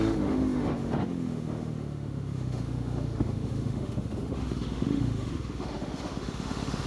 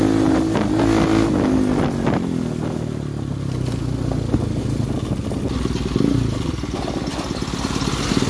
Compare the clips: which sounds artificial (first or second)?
first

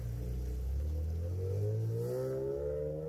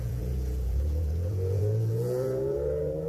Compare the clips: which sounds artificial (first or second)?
second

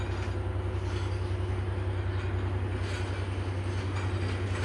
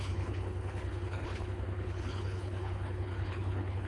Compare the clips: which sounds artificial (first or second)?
second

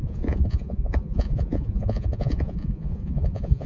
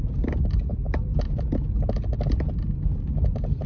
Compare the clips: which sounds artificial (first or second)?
first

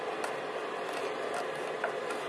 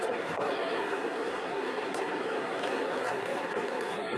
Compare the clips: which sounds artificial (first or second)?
second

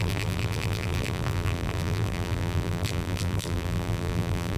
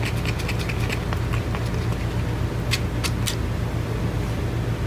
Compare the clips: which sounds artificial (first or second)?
first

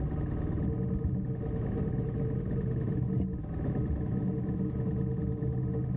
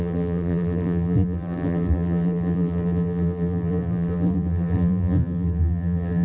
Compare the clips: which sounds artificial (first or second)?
second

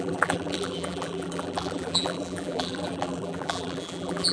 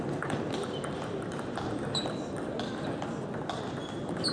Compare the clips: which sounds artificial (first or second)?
first